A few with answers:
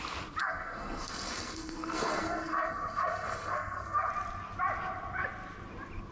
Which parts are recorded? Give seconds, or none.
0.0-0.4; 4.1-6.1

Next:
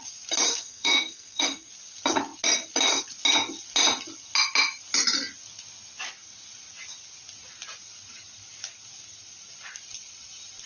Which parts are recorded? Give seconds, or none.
0.0-0.5; 1.7-10.7

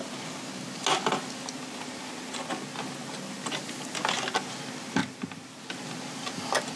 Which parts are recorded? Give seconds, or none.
0.0-6.8

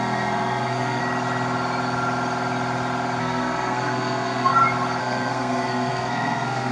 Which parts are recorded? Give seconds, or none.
1.0-3.2; 4.5-5.0

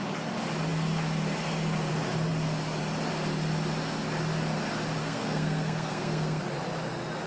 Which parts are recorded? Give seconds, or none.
0.0-5.0; 6.4-7.3